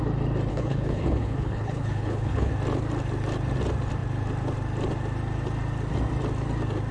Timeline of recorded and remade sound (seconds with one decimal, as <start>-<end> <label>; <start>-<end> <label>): 0.0-0.5 recorded; 0.5-2.5 remade; 2.5-6.9 recorded